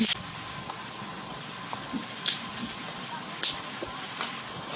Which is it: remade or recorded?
recorded